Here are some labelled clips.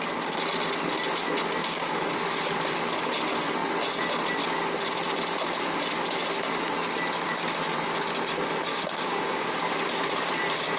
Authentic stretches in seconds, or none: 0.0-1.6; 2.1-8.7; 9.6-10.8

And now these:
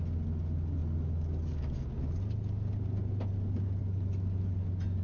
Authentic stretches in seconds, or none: 0.0-5.0

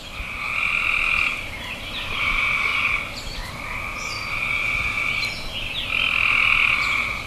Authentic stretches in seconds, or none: 0.0-7.3

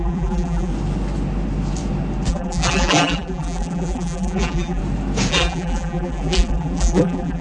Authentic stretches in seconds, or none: 0.7-2.3; 4.8-5.3

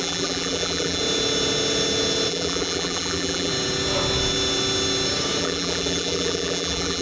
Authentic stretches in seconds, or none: 1.0-2.3; 3.5-5.4